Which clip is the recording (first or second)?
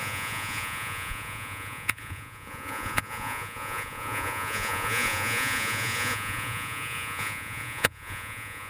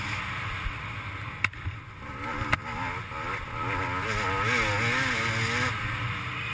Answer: second